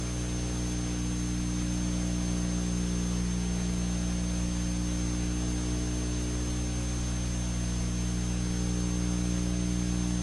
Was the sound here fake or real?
real